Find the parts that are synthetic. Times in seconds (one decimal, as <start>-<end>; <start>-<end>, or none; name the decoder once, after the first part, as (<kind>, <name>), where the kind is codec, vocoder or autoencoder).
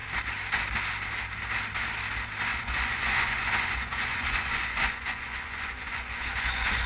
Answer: 2.5-6.9 (vocoder, Vocos)